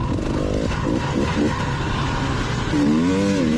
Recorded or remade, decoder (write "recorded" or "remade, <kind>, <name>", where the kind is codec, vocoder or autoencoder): recorded